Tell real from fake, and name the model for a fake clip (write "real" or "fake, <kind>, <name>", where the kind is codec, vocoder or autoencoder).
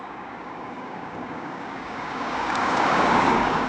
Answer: fake, codec, DAC